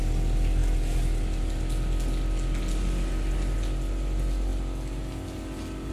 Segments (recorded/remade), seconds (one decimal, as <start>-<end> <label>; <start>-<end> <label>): 0.0-5.9 recorded